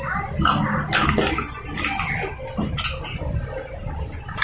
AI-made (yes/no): no